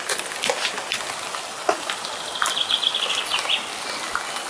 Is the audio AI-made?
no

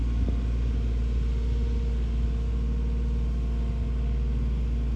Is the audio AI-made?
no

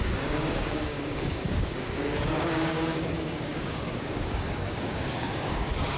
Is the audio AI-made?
yes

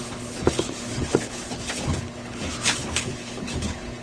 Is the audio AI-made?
yes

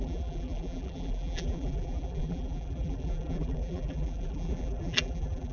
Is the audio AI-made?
yes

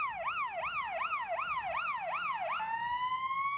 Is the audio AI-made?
no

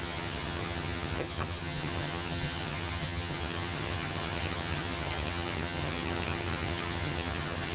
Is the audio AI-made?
yes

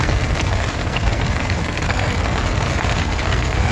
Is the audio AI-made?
yes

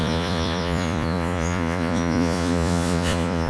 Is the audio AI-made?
yes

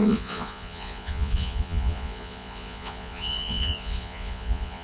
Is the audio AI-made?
yes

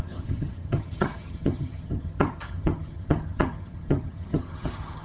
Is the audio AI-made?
yes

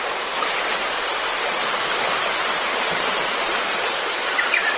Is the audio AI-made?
yes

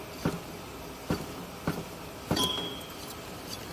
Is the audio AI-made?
yes